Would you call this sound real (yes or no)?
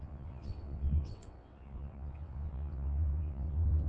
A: no